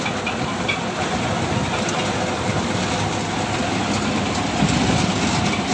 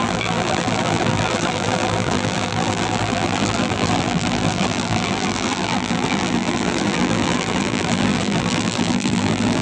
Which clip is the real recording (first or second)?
first